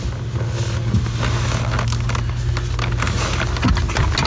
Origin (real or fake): real